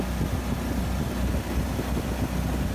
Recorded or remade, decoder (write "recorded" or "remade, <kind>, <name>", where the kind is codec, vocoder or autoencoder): recorded